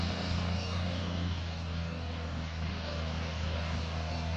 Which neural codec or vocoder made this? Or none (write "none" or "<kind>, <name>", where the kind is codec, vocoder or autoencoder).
codec, DAC